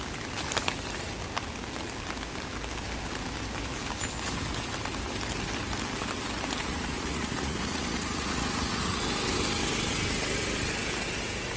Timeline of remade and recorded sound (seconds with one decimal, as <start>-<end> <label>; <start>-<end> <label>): 0.0-6.6 recorded; 6.6-9.0 remade; 9.0-11.6 recorded